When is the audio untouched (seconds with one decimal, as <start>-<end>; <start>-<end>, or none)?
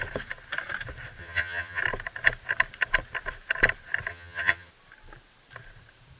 0.0-1.2; 1.8-4.1; 4.7-6.2